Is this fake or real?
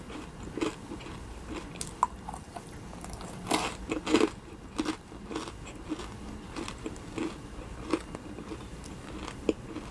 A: real